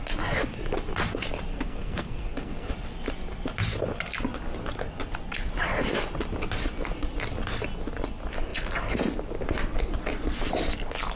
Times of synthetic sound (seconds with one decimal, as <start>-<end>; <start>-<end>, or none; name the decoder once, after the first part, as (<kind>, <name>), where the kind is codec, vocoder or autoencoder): 1.5-2.7 (codec, SNAC)